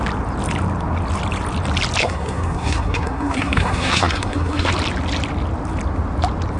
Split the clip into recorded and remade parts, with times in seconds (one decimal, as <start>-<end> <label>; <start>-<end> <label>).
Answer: 0.0-2.0 recorded; 2.0-4.7 remade; 4.7-6.6 recorded